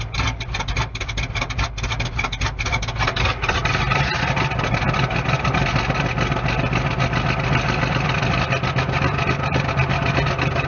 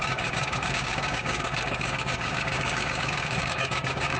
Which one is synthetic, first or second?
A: second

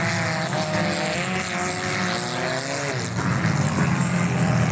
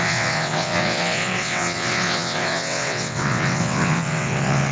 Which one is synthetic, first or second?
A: second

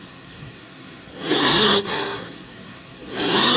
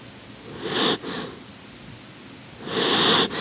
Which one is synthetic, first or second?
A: first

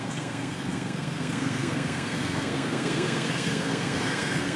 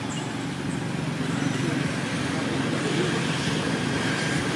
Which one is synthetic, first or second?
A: first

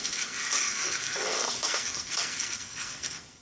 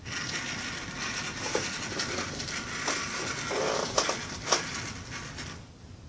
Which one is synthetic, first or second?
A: first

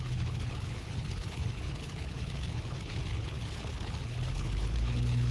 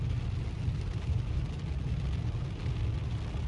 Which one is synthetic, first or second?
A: first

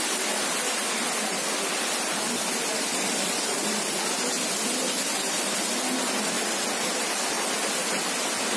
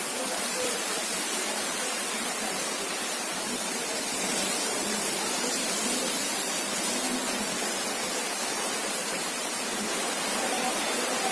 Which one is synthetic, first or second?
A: second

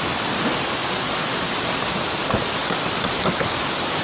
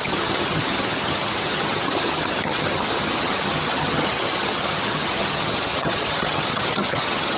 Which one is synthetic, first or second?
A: second